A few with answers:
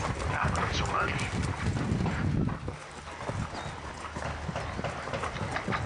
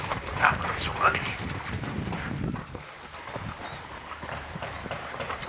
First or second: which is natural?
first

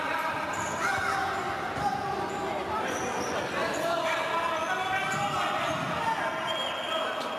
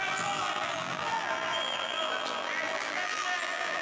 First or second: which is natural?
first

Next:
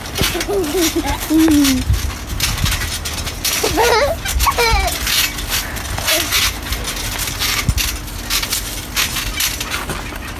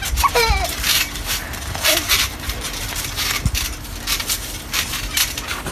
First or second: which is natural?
first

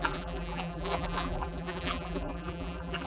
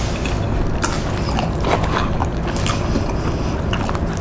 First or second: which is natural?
second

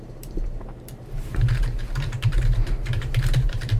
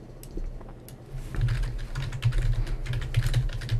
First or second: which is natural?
second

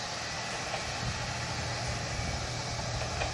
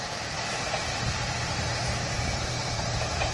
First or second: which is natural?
first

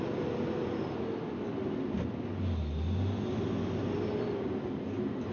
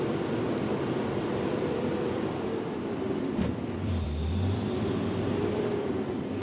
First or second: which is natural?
first